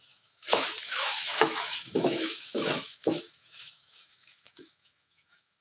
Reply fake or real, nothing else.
fake